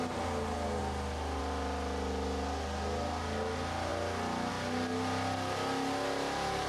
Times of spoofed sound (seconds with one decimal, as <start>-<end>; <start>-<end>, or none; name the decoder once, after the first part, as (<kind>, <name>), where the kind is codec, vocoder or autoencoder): none